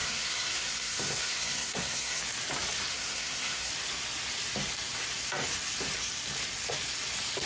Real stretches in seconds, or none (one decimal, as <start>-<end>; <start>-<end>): 2.2-2.9; 3.7-7.5